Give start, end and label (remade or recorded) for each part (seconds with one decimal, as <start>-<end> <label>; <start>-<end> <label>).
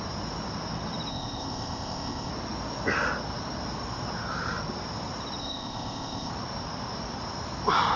0.0-1.1 recorded; 1.1-2.3 remade; 2.3-5.4 recorded; 5.4-6.3 remade; 6.3-8.0 recorded